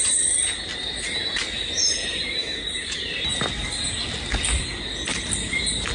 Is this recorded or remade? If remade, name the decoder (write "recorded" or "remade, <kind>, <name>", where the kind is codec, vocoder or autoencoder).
recorded